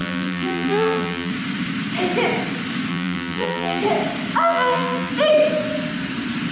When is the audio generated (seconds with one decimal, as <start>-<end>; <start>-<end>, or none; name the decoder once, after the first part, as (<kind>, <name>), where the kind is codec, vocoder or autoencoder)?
0.0-1.3 (vocoder, BigVGAN v2); 2.9-3.8; 4.4-5.1